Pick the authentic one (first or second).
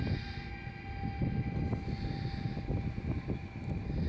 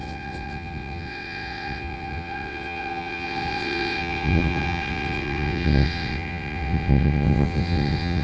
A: first